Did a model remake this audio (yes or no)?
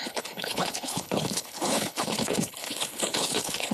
yes